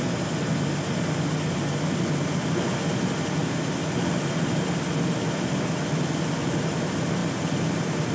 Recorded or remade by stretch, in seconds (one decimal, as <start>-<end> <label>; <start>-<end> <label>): 0.0-7.2 recorded; 7.2-8.1 remade